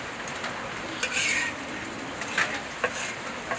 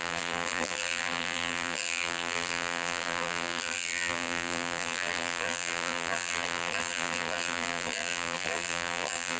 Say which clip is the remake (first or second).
second